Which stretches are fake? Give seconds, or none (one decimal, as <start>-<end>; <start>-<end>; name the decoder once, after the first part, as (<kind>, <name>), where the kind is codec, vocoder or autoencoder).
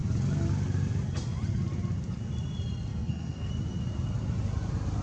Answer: 2.9-3.5 (codec, SNAC)